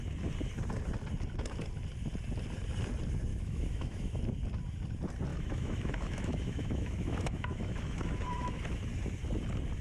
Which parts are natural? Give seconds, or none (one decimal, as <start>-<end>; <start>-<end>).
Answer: 0.0-3.3; 4.2-5.3; 8.8-9.8

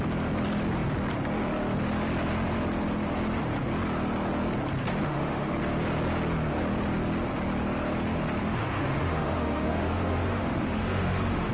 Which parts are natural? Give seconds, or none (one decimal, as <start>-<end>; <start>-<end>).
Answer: 0.0-5.0; 5.6-8.4

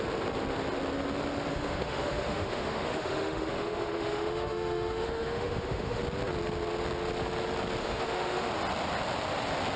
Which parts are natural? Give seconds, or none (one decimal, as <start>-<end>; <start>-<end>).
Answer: 0.0-1.5; 6.0-7.8; 8.5-9.8

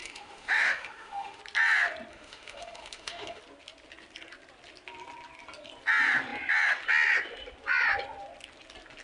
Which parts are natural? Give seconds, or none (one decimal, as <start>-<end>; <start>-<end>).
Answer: 1.4-2.1; 3.4-9.0

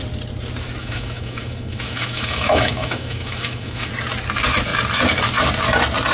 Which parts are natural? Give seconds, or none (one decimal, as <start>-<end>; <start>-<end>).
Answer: 0.0-0.8; 3.9-6.1

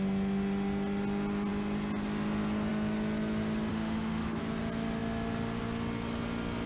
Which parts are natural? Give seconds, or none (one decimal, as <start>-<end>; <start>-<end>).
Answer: 0.0-3.7; 4.4-6.7

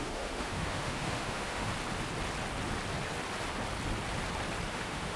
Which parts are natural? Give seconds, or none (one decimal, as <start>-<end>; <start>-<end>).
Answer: 1.7-4.7

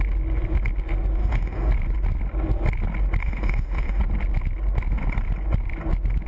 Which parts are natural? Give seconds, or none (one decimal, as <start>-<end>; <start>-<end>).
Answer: 0.0-1.2; 1.7-3.2; 4.0-6.3